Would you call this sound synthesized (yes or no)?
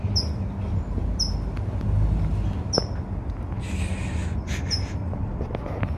no